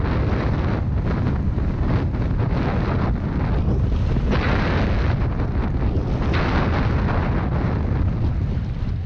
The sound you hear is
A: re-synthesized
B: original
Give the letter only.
B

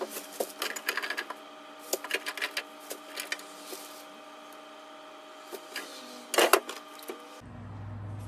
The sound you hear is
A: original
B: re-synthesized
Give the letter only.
A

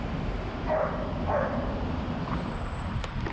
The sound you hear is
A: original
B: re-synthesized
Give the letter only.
B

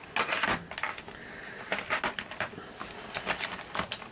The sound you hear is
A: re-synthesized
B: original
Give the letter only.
B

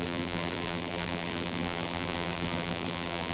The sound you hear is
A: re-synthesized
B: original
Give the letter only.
A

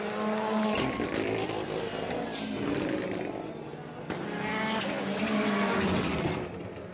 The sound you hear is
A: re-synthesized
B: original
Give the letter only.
B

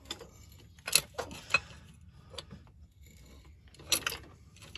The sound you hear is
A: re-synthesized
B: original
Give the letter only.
B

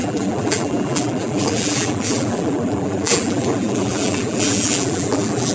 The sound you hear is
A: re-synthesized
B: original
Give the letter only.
A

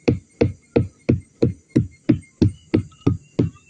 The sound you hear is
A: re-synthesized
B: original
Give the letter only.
B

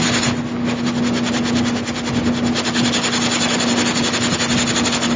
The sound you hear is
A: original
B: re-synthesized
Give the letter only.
A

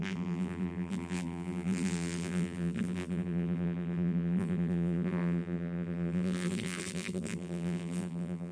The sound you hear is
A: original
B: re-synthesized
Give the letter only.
B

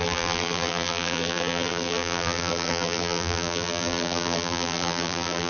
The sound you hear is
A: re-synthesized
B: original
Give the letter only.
A